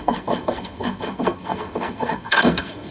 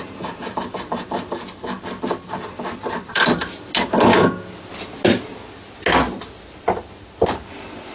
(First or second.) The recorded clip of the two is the second